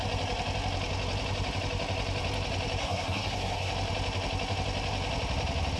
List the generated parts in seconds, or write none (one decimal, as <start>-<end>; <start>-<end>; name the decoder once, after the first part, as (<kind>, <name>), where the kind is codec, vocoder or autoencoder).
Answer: 2.8-3.7 (codec, SNAC)